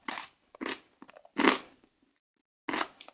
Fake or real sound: real